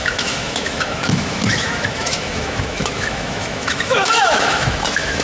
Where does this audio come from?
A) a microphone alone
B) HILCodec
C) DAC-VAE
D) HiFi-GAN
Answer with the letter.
C